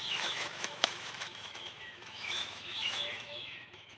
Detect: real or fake fake